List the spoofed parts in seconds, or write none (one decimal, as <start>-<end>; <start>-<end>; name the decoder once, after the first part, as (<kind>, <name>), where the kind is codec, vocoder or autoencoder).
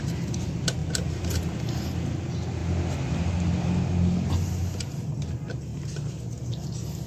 none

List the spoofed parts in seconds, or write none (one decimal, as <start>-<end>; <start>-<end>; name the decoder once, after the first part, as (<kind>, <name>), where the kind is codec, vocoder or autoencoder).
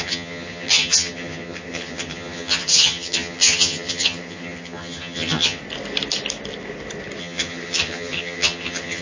0.0-5.6 (vocoder, HiFi-GAN); 7.2-9.0